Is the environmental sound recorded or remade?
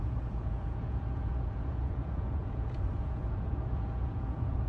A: remade